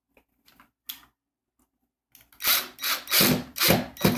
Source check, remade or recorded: recorded